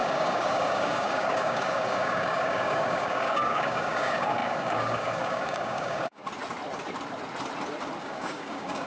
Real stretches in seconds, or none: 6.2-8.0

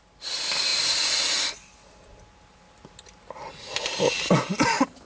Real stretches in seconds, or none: 0.0-5.1